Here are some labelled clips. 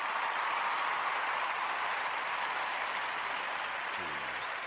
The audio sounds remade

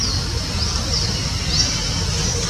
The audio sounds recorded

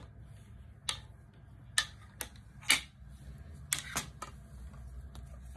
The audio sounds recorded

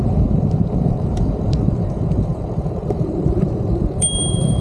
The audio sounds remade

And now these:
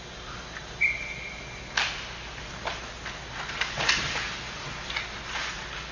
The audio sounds recorded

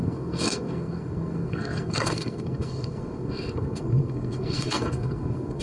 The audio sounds remade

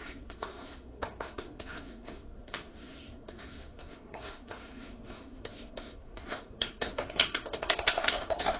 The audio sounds remade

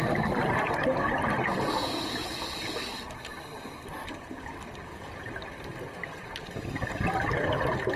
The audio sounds recorded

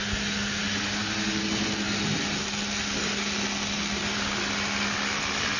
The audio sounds recorded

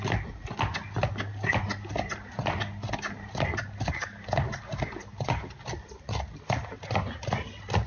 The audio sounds recorded